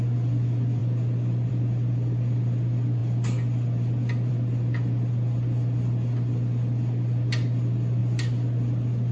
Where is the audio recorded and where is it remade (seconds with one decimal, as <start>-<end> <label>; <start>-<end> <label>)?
0.0-9.1 recorded